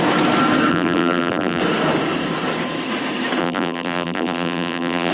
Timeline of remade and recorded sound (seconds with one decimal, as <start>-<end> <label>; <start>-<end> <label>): 0.0-0.7 recorded; 0.7-1.6 remade; 1.6-3.4 recorded; 3.4-5.1 remade